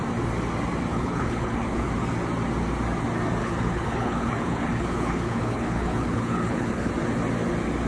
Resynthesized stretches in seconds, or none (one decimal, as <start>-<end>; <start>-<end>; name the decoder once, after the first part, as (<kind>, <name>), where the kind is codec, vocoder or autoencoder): 0.9-1.9 (codec, HILCodec); 3.4-6.9